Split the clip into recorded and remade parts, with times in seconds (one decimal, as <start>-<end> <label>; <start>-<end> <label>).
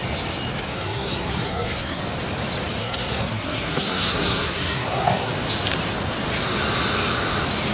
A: 0.0-0.7 recorded; 0.7-2.0 remade; 2.0-2.8 recorded; 2.8-5.3 remade; 5.3-7.7 recorded